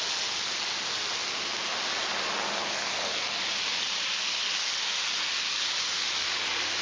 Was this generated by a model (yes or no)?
no